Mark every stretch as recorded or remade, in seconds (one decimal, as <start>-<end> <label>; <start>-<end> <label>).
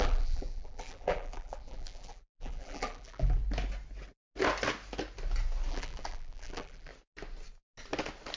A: 0.0-3.4 remade; 3.4-5.7 recorded; 5.7-6.9 remade; 6.9-8.4 recorded